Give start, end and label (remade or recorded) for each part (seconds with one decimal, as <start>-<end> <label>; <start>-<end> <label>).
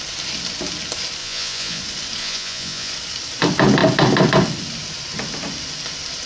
0.0-1.2 recorded; 1.2-1.8 remade; 1.8-2.2 recorded; 2.2-2.9 remade; 2.9-6.3 recorded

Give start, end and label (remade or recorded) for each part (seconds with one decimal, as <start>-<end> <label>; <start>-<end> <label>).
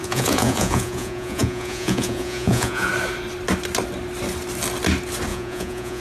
0.0-2.9 remade; 2.9-5.3 recorded; 5.3-6.0 remade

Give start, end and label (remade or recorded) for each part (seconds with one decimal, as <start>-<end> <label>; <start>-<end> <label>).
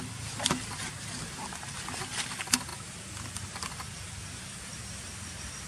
0.0-5.7 recorded